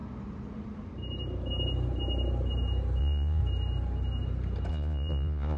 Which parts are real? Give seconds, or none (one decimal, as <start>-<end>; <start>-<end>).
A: 0.0-3.0; 3.4-4.7